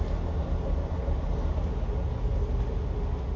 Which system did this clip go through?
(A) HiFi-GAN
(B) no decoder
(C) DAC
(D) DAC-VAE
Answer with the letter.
B